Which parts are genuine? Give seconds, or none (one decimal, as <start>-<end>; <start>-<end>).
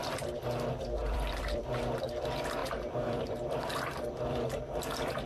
0.0-1.0; 1.7-2.6; 4.8-5.3